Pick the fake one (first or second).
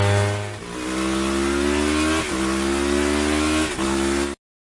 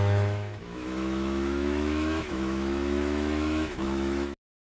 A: second